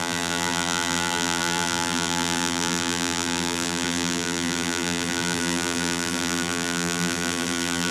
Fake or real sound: fake